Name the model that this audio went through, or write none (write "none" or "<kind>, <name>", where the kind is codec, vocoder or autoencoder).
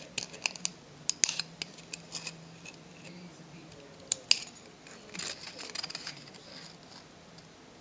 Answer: none